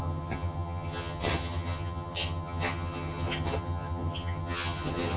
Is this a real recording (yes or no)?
no